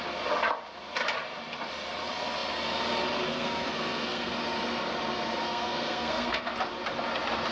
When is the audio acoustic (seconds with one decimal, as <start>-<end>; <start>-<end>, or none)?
0.0-3.3; 4.3-5.4; 6.5-7.5